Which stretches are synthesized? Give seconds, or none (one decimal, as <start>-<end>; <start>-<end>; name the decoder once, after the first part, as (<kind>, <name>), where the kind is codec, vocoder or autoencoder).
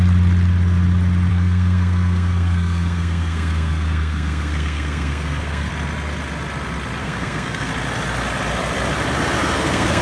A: 1.3-5.7 (codec, SNAC); 7.0-7.7; 9.4-10.0